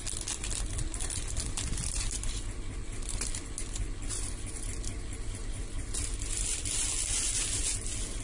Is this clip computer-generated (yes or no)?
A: no